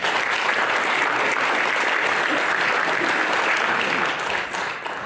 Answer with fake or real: real